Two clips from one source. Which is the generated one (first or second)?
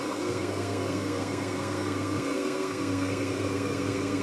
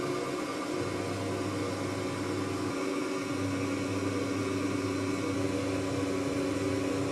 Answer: first